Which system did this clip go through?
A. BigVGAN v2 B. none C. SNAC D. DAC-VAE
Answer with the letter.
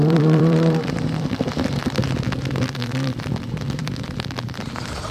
A